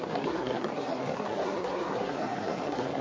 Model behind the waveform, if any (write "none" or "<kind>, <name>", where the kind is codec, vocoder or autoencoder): codec, SNAC